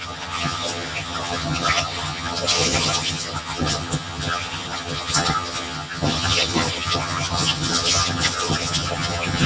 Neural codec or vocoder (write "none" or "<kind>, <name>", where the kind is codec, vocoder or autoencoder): vocoder, HiFi-GAN